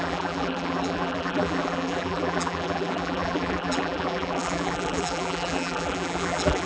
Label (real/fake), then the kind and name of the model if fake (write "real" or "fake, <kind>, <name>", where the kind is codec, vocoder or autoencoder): fake, vocoder, BigVGAN v2